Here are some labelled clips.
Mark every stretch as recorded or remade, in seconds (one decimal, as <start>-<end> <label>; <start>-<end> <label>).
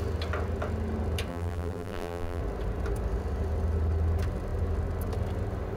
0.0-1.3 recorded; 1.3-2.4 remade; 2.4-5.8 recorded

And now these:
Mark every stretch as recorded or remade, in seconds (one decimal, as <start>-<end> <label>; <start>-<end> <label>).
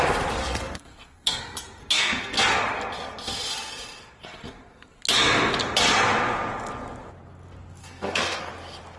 0.0-0.4 recorded; 0.4-1.4 remade; 1.4-1.8 recorded; 1.8-2.4 remade; 2.4-7.8 recorded; 7.8-8.5 remade; 8.5-9.0 recorded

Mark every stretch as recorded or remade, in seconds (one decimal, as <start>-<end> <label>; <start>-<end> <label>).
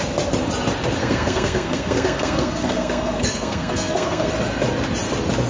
0.0-1.0 recorded; 1.0-4.3 remade; 4.3-5.5 recorded